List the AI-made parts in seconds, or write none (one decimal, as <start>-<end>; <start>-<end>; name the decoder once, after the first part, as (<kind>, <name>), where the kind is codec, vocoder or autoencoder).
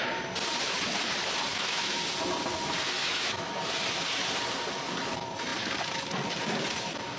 1.5-2.0 (autoencoder, DAC-VAE); 3.0-3.5